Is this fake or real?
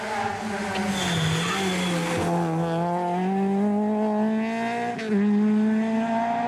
real